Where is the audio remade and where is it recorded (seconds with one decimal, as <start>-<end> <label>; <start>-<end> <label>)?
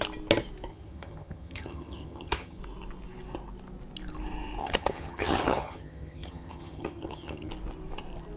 0.0-0.7 recorded; 0.7-2.6 remade; 2.6-4.6 recorded; 4.6-7.5 remade; 7.5-8.4 recorded